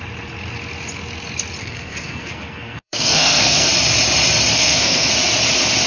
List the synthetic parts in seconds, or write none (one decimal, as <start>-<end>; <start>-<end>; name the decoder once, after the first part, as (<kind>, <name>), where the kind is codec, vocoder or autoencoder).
1.6-3.7 (codec, SNAC); 4.5-5.1